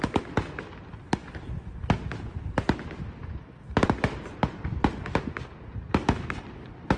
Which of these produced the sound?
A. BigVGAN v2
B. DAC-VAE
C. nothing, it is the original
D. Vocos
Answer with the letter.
C